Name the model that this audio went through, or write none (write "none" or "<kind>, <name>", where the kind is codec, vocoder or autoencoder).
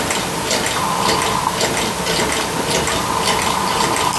none